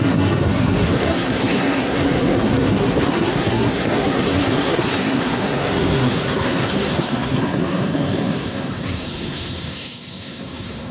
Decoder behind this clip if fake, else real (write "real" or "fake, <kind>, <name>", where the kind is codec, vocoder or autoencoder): fake, codec, SNAC